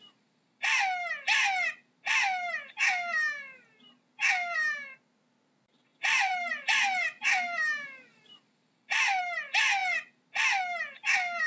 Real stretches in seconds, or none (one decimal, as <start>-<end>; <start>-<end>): 0.0-5.9; 6.7-8.1; 9.2-11.5